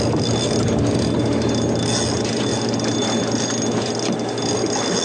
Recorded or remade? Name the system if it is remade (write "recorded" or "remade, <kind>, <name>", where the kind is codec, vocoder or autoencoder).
recorded